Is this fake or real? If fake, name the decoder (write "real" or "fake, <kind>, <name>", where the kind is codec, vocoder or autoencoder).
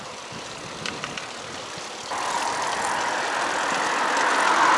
real